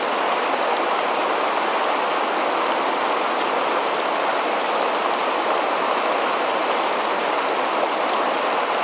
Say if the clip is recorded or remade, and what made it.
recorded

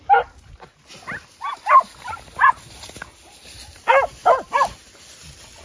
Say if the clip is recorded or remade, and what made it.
recorded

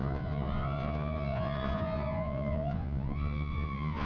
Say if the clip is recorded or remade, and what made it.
remade, vocoder, Vocos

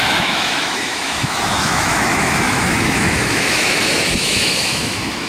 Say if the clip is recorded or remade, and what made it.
remade, autoencoder, DAC-VAE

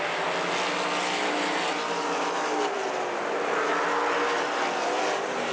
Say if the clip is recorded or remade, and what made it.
recorded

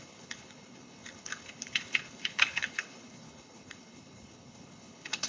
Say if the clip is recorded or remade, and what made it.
remade, codec, HILCodec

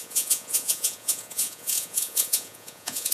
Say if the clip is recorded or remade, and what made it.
remade, vocoder, Vocos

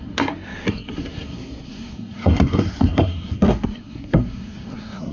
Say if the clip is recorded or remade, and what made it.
remade, codec, SNAC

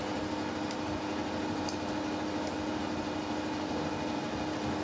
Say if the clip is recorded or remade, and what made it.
recorded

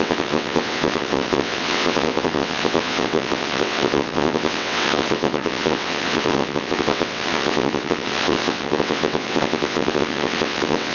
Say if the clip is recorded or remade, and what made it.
remade, vocoder, WaveNeXt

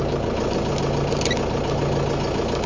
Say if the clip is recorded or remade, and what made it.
recorded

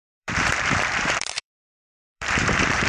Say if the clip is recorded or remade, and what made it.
remade, vocoder, BigVGAN v2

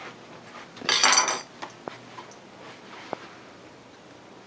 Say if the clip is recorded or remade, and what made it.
recorded